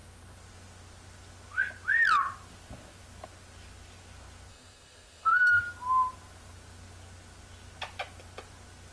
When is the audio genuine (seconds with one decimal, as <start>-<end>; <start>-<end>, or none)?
0.0-4.5; 5.6-8.9